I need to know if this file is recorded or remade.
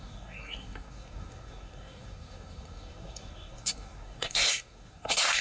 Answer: remade